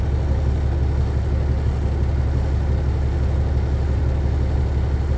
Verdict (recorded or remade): recorded